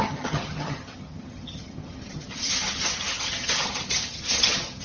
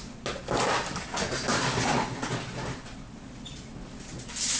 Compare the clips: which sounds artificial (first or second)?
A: first